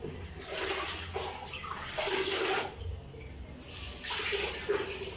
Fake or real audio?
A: real